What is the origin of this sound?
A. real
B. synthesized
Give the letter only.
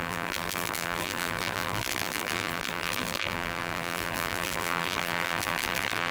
B